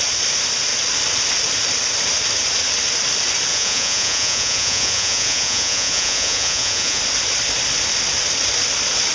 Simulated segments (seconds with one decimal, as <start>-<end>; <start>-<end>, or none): 3.5-7.0